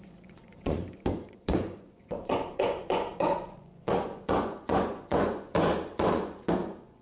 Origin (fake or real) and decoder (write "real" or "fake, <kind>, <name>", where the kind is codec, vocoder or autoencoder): fake, vocoder, Vocos